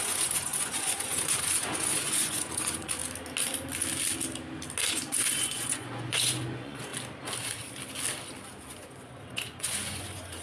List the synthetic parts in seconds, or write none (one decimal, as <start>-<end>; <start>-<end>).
0.0-3.0; 4.9-6.9; 8.7-10.4